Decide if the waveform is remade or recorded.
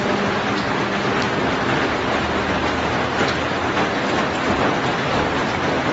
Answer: recorded